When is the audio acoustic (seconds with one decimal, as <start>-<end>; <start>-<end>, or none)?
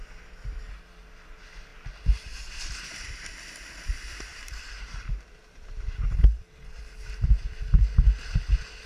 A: 0.0-4.3; 6.6-8.9